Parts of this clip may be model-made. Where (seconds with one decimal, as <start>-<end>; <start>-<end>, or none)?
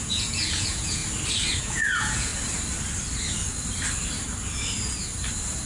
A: 0.0-1.0; 1.6-2.3